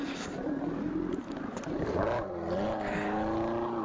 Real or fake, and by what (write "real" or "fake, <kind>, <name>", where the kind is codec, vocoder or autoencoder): real